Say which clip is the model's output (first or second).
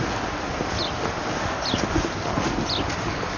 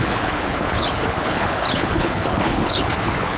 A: second